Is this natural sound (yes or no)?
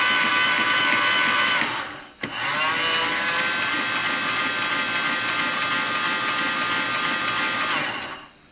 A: yes